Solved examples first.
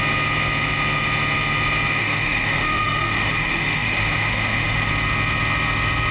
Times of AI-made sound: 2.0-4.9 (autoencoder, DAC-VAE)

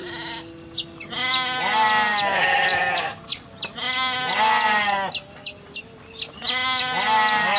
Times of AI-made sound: none

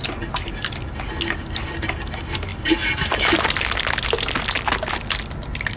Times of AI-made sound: none

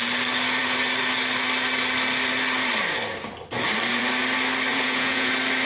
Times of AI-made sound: 4.7-5.3 (vocoder, Vocos)

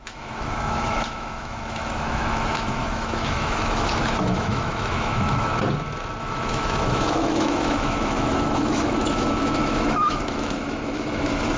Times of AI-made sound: 0.0-5.5 (autoencoder, DAC-VAE); 6.2-11.6